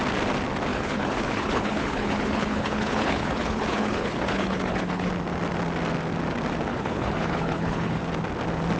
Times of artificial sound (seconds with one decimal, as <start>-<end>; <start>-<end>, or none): 0.7-5.1; 6.7-8.0